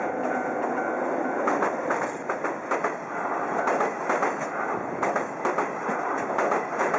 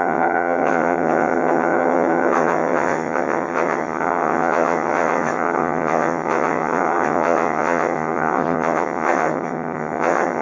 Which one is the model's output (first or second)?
second